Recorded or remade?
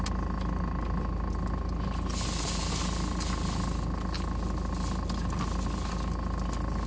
recorded